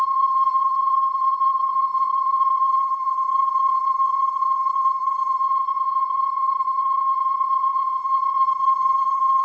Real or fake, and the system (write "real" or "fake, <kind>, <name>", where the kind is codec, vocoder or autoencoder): fake, vocoder, HiFi-GAN